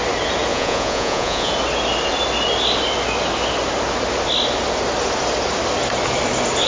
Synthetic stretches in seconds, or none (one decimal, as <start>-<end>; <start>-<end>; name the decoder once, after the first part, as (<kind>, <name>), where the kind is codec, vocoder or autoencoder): 0.5-1.5 (vocoder, Vocos)